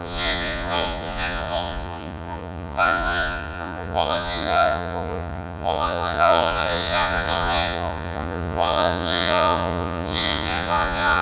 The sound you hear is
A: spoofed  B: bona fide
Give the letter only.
A